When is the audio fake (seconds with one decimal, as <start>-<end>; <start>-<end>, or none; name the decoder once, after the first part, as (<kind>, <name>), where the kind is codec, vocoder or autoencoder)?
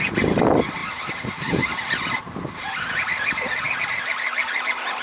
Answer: none